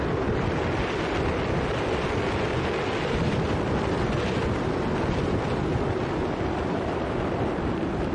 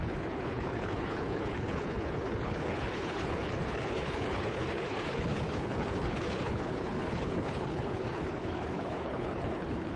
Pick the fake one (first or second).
second